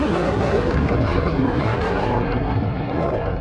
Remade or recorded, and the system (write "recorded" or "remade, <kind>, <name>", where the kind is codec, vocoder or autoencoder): remade, codec, SNAC